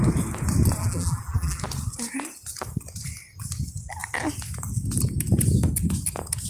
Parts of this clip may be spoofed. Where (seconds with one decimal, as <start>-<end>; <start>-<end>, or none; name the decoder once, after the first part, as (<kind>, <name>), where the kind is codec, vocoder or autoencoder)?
0.8-1.6 (vocoder, BigVGAN v2)